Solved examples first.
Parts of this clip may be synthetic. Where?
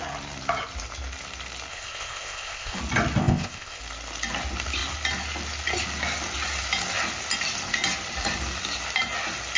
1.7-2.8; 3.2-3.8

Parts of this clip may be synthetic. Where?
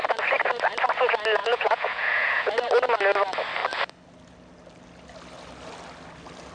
1.4-2.5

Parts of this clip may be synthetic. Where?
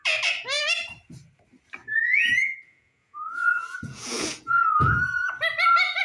1.8-5.3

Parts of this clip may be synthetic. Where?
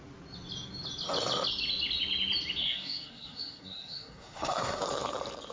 2.6-4.8